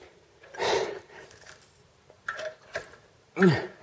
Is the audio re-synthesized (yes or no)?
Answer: yes